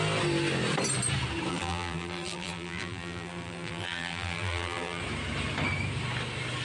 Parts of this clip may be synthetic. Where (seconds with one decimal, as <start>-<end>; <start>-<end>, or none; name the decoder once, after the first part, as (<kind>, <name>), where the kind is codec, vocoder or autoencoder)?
1.5-5.0 (vocoder, BigVGAN v2)